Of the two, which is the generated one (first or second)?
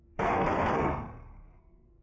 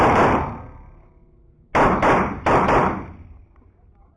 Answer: first